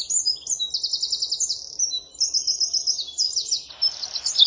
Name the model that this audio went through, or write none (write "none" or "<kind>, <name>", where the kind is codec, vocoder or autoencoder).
none